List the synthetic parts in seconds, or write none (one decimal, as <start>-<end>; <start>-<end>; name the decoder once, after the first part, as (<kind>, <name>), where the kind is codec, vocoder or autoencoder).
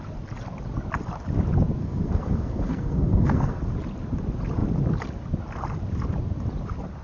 1.8-3.6 (codec, SNAC)